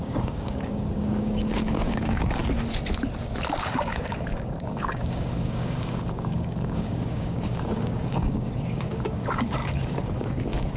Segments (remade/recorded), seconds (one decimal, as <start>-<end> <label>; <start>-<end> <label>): 0.0-2.4 remade; 2.4-3.5 recorded; 3.5-10.8 remade

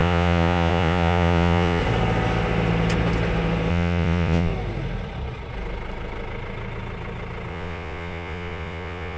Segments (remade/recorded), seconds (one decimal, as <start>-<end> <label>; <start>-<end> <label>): 0.0-1.8 remade; 1.8-3.7 recorded; 3.7-4.5 remade; 4.5-7.5 recorded; 7.5-9.2 remade

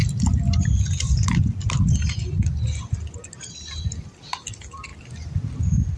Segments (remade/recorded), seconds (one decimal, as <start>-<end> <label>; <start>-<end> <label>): 0.0-6.0 recorded

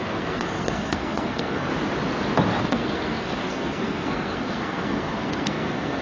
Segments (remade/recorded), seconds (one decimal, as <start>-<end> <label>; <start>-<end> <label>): 0.0-1.7 remade; 1.7-2.6 recorded; 2.6-6.0 remade

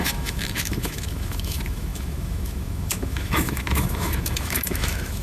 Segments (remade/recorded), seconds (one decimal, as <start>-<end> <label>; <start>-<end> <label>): 0.0-5.2 remade

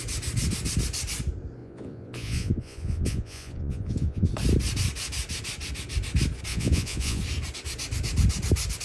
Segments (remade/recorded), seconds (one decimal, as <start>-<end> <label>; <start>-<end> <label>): 0.0-1.6 recorded; 1.6-4.3 remade; 4.3-6.5 recorded; 6.5-7.2 remade; 7.2-8.8 recorded

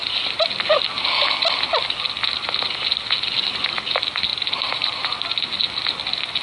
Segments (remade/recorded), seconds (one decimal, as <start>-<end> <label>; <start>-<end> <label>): 0.0-0.8 remade; 0.8-4.3 recorded; 4.3-5.4 remade; 5.4-6.4 recorded